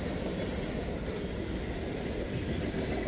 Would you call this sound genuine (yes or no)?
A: yes